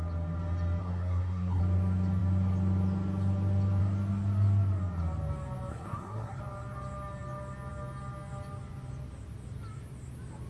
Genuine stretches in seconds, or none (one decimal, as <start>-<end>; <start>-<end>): 0.0-0.8; 1.6-5.7; 6.4-10.5